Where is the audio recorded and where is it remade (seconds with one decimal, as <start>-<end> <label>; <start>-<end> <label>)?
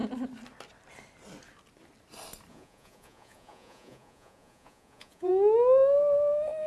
0.0-2.5 recorded; 2.5-5.3 remade; 5.3-6.7 recorded